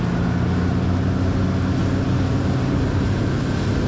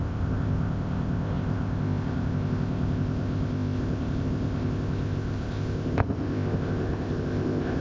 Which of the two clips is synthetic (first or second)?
second